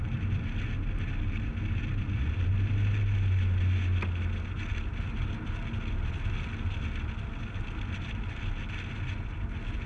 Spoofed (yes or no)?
no